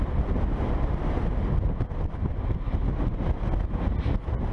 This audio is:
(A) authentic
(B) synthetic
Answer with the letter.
A